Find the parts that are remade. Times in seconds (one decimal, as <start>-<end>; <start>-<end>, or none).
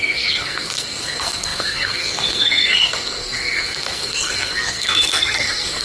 0.0-5.8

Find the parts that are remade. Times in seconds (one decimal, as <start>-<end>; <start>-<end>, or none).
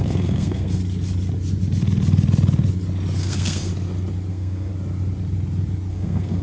0.0-0.8; 3.2-3.7; 4.3-4.7; 5.9-6.4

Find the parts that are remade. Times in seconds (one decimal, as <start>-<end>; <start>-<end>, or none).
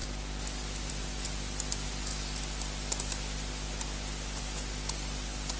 none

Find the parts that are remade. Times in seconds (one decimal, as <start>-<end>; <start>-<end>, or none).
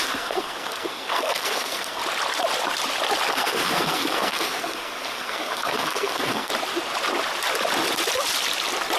0.0-2.0; 3.3-6.5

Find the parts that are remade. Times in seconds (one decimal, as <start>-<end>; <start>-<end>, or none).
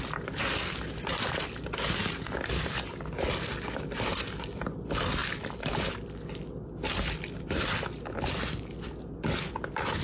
none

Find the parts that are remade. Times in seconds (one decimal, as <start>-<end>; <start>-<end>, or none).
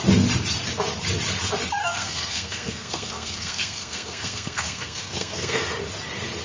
1.8-5.6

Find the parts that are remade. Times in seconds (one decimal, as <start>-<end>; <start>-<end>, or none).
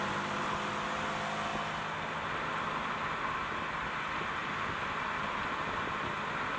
none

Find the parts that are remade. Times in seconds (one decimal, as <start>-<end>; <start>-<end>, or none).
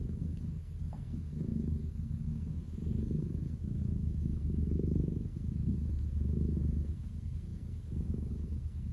0.0-8.9